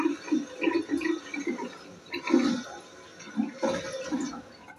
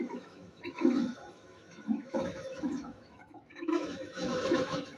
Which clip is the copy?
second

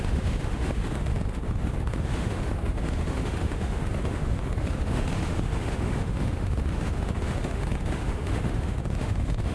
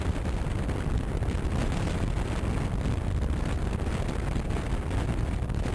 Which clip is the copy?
first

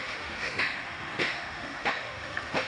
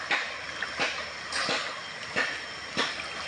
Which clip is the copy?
first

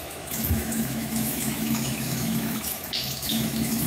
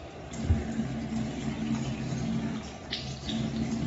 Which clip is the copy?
first